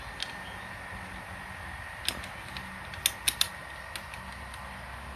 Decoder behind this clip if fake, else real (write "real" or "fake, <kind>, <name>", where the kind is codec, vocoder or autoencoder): real